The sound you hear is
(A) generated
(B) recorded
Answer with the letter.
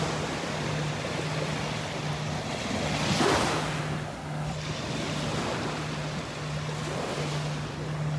B